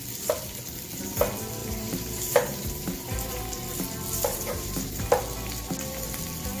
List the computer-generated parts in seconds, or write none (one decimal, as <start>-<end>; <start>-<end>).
1.6-3.4; 4.3-5.2